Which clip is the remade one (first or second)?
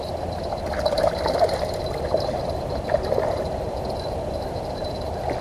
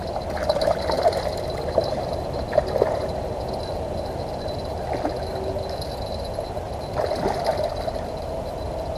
first